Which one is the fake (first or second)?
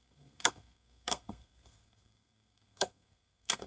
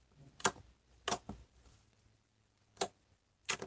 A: first